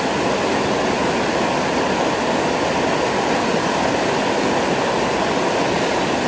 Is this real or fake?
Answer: real